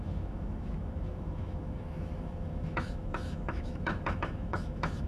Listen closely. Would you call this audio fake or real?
fake